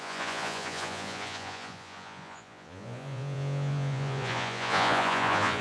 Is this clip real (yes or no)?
no